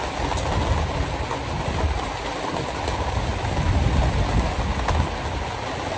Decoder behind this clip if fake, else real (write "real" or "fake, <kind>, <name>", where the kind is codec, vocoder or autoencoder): real